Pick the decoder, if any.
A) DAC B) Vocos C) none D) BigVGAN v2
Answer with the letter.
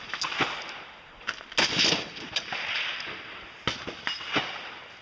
C